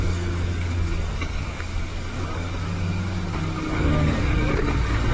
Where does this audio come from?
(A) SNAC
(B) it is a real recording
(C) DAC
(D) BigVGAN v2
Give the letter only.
C